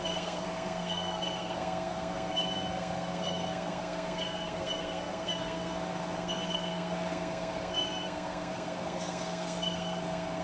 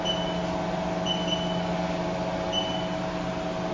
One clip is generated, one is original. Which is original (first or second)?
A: second